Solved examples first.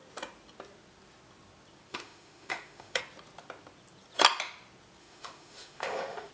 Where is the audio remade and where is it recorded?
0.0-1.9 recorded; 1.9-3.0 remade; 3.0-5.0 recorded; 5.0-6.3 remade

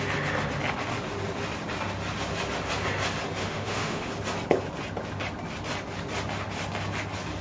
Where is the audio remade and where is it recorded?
0.0-3.4 recorded; 3.4-4.1 remade; 4.1-7.4 recorded

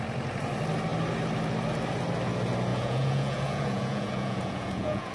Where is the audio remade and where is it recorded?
0.0-2.7 recorded; 2.7-5.1 remade

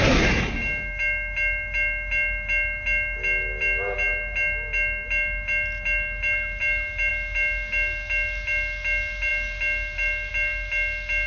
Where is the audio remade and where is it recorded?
0.0-11.3 recorded

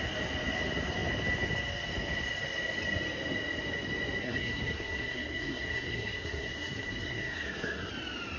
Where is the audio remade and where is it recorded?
0.0-4.2 recorded; 4.2-7.9 remade; 7.9-8.4 recorded

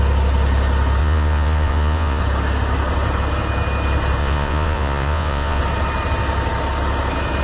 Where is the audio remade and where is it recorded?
0.0-1.0 recorded; 1.0-2.2 remade; 2.2-4.2 recorded; 4.2-5.6 remade; 5.6-7.4 recorded

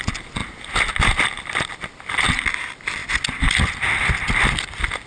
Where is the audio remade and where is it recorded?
0.0-5.1 recorded